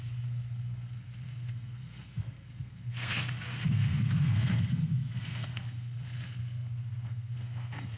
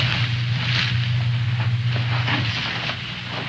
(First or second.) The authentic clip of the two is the second